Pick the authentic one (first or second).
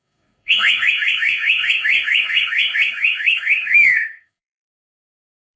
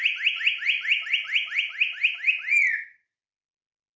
second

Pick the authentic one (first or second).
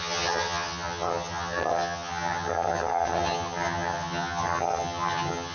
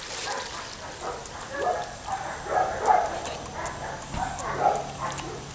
second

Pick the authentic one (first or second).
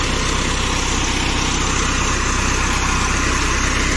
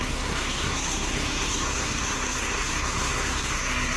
first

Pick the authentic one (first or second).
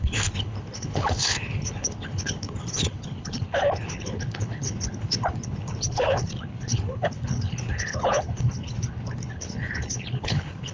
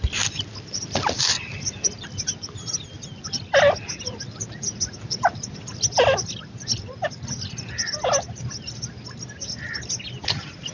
second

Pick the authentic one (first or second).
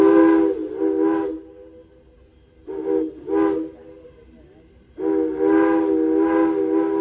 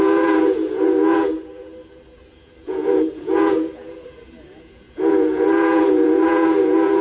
first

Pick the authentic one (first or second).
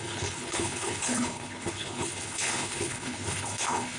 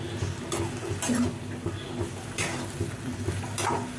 second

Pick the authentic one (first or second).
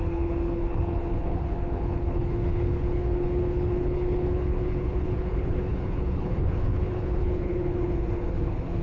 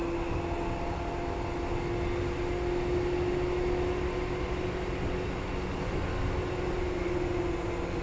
second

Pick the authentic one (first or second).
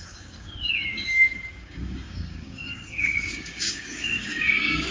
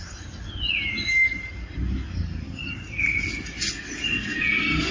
second